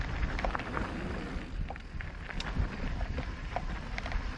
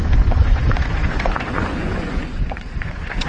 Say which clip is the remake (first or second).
second